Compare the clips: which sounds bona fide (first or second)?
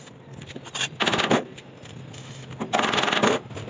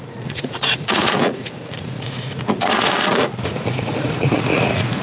first